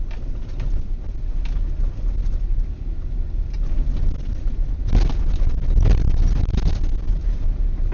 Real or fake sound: real